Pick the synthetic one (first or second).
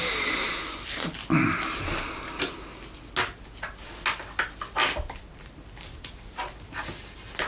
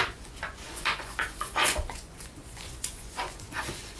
second